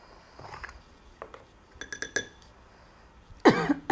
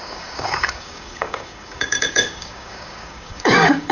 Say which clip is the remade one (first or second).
second